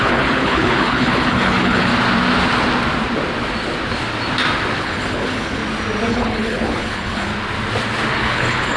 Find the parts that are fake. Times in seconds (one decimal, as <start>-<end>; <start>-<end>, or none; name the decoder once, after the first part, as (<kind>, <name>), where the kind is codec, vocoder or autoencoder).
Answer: 0.0-1.9 (codec, HILCodec); 4.8-5.6; 6.1-7.3; 8.2-8.8